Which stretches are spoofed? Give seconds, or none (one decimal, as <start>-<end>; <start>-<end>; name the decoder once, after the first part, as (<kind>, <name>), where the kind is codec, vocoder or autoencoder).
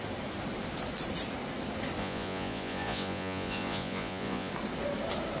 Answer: 2.0-4.5 (vocoder, Vocos)